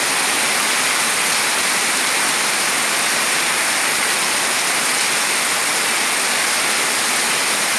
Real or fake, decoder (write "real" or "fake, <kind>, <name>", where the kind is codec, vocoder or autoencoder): real